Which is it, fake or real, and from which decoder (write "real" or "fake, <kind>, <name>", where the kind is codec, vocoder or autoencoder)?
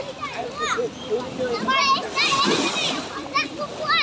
real